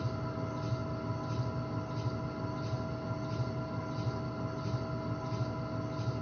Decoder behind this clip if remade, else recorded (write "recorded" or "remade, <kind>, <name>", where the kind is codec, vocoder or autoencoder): recorded